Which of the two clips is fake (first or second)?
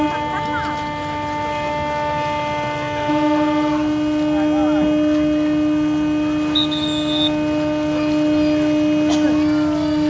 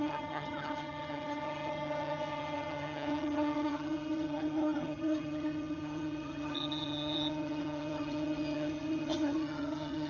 second